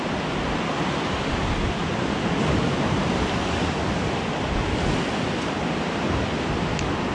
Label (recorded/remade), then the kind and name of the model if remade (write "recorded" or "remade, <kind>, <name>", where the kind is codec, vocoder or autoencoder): recorded